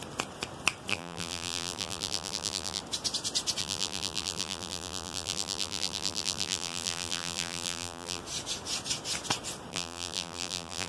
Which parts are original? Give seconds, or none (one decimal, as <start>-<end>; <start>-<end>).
0.0-0.9; 2.8-3.6; 8.2-9.7